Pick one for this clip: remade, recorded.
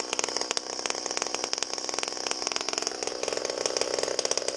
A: recorded